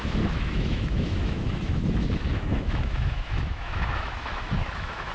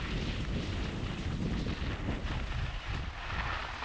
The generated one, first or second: first